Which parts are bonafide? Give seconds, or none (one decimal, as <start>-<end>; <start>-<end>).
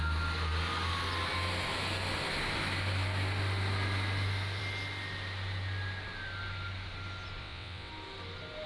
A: 0.0-7.4; 7.9-8.7